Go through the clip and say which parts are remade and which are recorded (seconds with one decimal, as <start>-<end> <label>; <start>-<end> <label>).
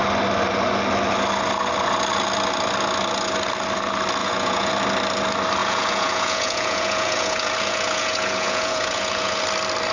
0.0-4.2 recorded; 4.2-4.7 remade; 4.7-5.6 recorded; 5.6-9.4 remade; 9.4-9.9 recorded